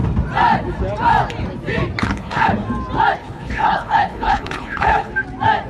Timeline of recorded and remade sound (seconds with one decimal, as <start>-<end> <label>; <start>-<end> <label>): 0.0-2.0 recorded; 2.0-2.5 remade; 2.5-3.2 recorded; 3.2-5.1 remade; 5.1-5.7 recorded